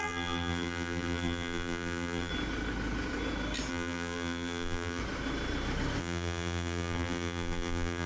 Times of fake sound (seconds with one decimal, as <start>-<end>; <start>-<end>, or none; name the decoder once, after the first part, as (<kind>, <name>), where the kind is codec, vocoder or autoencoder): 0.0-2.3 (vocoder, BigVGAN v2); 3.7-5.0; 6.0-8.1